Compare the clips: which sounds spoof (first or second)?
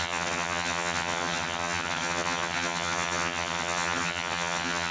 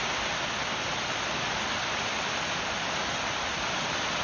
first